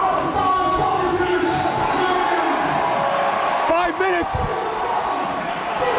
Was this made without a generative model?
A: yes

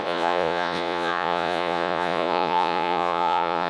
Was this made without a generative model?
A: no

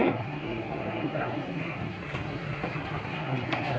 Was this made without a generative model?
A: no